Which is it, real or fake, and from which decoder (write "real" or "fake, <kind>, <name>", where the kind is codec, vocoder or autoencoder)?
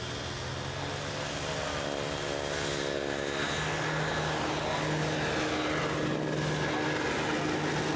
real